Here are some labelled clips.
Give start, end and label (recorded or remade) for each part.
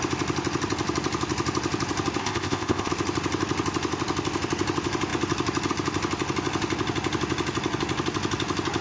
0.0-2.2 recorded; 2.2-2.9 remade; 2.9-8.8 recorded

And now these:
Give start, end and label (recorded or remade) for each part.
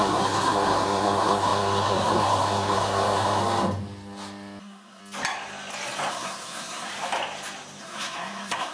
0.0-3.4 remade; 3.4-4.6 recorded; 4.6-5.0 remade; 5.0-6.1 recorded; 6.1-6.9 remade; 6.9-7.8 recorded; 7.8-8.7 remade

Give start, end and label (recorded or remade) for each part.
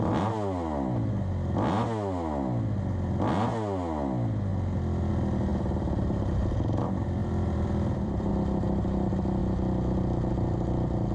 0.0-4.5 recorded; 4.5-5.1 remade; 5.1-5.5 recorded; 5.5-6.5 remade; 6.5-7.2 recorded; 7.2-8.3 remade; 8.3-11.1 recorded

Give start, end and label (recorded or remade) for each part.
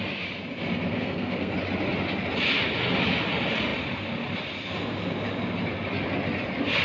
0.0-0.9 recorded; 0.9-1.5 remade; 1.5-6.8 recorded